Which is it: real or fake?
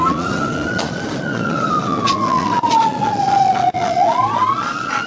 fake